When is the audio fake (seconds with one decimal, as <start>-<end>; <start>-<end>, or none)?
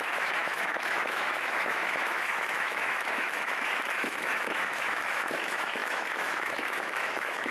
0.0-7.5